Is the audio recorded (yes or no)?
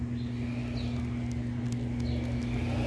yes